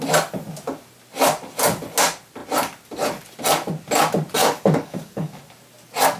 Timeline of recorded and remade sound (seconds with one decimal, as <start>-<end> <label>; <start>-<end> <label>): 0.0-4.4 recorded; 4.4-5.4 remade; 5.4-6.2 recorded